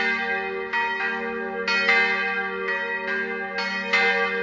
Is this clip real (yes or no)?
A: yes